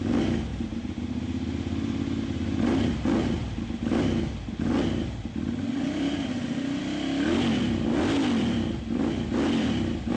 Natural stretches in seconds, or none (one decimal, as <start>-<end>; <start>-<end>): 0.0-0.5; 2.9-10.2